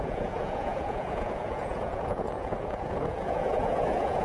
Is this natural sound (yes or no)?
no